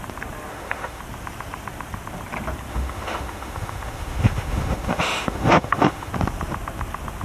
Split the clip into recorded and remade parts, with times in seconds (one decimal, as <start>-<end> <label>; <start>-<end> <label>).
0.0-0.5 recorded; 0.5-1.0 remade; 1.0-2.7 recorded; 2.7-6.1 remade; 6.1-7.2 recorded